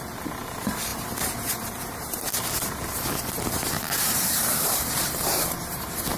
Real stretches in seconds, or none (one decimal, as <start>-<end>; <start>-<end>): 2.3-3.4